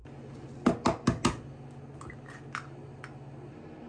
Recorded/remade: recorded